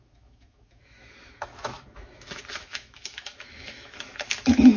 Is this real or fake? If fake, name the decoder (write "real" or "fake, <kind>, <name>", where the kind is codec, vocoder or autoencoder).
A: fake, autoencoder, DAC-VAE